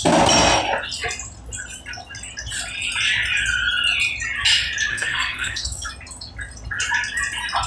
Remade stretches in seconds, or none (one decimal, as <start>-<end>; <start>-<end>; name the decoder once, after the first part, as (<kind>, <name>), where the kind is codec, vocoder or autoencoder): 4.9-5.9 (codec, SNAC)